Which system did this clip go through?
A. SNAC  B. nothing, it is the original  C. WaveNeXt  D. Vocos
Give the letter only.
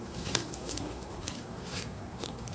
A